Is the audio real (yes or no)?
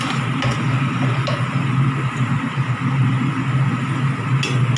yes